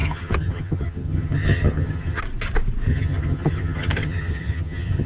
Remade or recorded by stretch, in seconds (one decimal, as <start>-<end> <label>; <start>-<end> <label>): 0.0-2.2 remade; 2.2-2.9 recorded; 2.9-5.1 remade